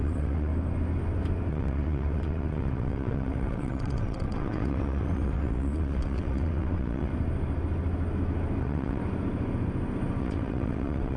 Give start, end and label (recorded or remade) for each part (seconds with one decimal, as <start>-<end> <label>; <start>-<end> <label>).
0.0-0.5 remade; 0.5-1.5 recorded; 1.5-7.1 remade; 7.1-8.6 recorded; 8.6-9.0 remade; 9.0-10.2 recorded; 10.2-11.2 remade